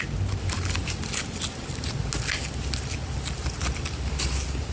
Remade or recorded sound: recorded